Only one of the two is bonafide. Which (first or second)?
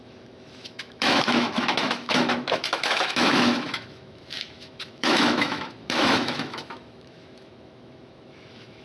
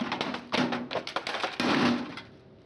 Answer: second